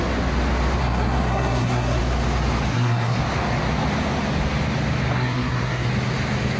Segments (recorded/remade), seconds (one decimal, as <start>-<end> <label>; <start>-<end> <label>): 0.0-0.8 recorded; 0.8-2.0 remade; 2.0-2.7 recorded; 2.7-3.2 remade; 3.2-5.1 recorded; 5.1-5.9 remade; 5.9-6.6 recorded